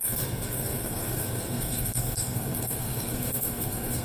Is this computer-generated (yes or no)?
yes